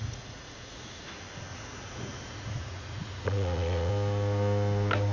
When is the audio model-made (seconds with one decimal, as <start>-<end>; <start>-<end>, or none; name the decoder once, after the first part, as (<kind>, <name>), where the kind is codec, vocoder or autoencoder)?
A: 0.0-1.0 (vocoder, Vocos); 1.5-3.9